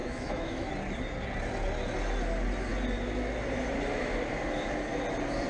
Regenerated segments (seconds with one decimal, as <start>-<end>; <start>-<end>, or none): 0.0-0.7